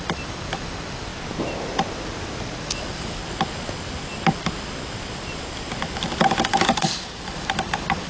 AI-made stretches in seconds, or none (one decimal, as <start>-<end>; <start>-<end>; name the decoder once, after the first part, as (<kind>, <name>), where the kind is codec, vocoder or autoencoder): 0.0-1.1 (vocoder, BigVGAN v2); 2.6-3.2; 6.5-8.1